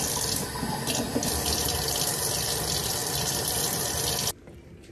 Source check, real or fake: real